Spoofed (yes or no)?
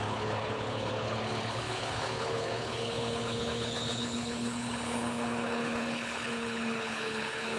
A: yes